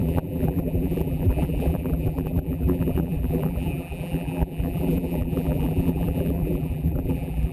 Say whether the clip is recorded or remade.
remade